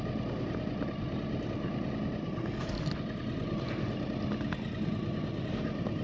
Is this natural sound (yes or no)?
yes